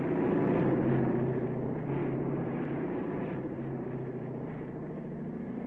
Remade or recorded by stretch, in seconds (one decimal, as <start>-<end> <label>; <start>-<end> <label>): 0.0-2.0 recorded; 2.0-5.7 remade

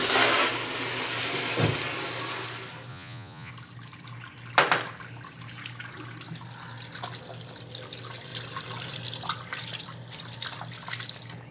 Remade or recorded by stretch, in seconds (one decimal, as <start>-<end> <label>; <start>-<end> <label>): 0.0-2.9 recorded; 2.9-3.5 remade; 3.5-11.5 recorded

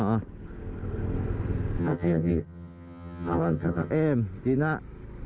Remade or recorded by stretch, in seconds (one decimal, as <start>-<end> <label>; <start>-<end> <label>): 0.0-1.8 recorded; 1.8-3.9 remade; 3.9-5.3 recorded

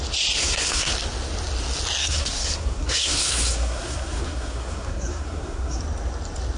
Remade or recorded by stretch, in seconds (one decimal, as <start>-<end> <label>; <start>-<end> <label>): 0.0-0.4 recorded; 0.4-0.9 remade; 0.9-2.0 recorded; 2.0-5.8 remade; 5.8-6.6 recorded

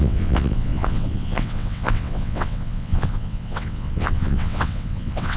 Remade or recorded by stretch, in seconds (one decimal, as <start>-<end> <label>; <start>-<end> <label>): 0.0-5.4 remade

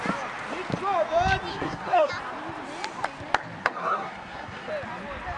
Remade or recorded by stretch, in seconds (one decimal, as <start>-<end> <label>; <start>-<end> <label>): 0.0-1.5 recorded; 1.5-2.1 remade; 2.1-3.6 recorded; 3.6-4.7 remade; 4.7-5.4 recorded